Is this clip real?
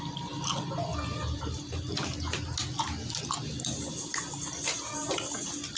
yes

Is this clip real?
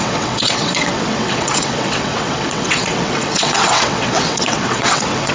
no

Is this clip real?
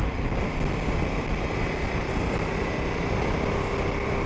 yes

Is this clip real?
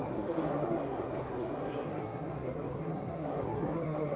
no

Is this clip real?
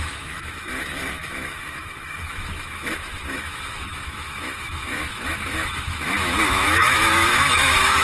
no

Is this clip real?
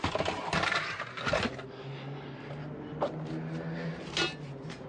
yes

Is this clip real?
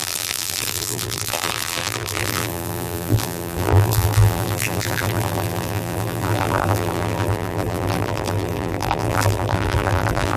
no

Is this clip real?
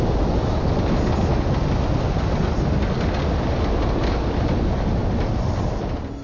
yes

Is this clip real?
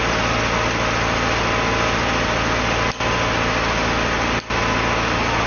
yes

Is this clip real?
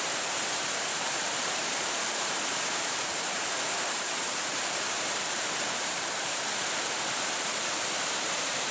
no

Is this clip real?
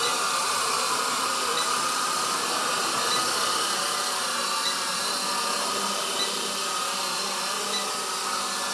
yes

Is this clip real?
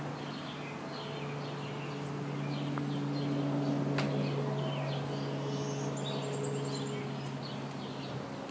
yes